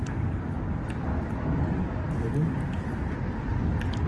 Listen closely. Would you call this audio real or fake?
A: real